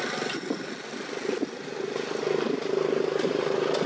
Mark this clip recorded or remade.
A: recorded